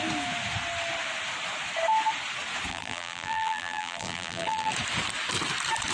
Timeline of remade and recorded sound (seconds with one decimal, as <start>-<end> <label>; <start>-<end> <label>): 0.0-2.7 recorded; 2.7-4.7 remade; 4.7-5.9 recorded